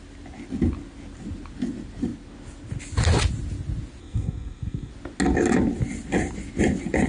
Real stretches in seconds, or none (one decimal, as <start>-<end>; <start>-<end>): 0.0-4.0; 4.9-7.1